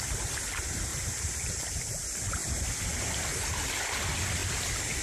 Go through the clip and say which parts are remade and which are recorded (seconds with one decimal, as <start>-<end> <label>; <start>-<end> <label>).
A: 0.0-0.9 recorded; 0.9-1.5 remade; 1.5-5.0 recorded